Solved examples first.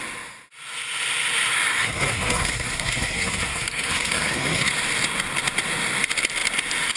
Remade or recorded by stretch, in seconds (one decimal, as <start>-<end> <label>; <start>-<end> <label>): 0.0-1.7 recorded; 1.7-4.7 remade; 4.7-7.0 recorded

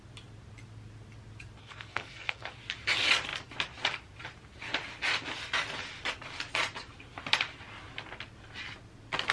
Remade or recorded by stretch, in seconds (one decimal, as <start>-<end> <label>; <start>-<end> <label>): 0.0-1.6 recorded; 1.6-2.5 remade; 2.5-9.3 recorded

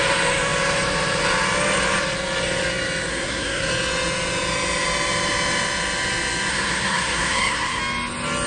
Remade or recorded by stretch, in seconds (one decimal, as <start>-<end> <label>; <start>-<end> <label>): 0.0-3.1 recorded; 3.1-3.7 remade; 3.7-6.5 recorded; 6.5-7.8 remade; 7.8-8.5 recorded

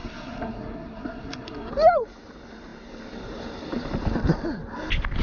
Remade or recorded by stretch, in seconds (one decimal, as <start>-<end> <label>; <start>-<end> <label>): 0.0-1.7 remade; 1.7-5.2 recorded

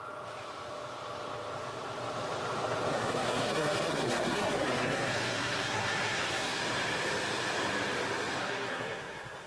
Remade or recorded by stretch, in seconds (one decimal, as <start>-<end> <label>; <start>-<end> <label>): 0.0-2.9 recorded; 2.9-6.6 remade; 6.6-8.4 recorded; 8.4-9.5 remade